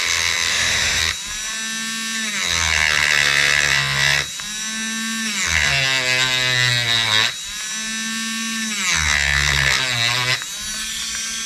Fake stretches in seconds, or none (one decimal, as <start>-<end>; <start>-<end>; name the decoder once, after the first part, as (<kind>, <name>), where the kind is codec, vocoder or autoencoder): 0.5-1.0 (autoencoder, DAC-VAE)